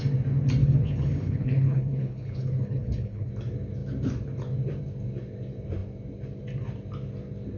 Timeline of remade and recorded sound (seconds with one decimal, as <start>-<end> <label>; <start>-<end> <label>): 0.0-0.6 recorded; 0.6-3.3 remade; 3.3-7.6 recorded